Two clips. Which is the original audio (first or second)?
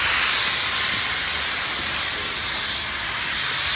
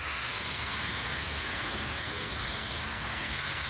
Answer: first